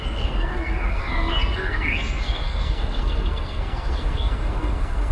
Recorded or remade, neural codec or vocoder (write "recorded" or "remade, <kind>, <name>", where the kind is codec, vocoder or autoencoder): remade, codec, SNAC